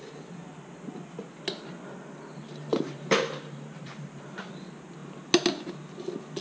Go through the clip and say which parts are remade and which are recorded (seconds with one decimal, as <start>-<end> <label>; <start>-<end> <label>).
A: 0.0-2.7 recorded; 2.7-4.5 remade; 4.5-6.4 recorded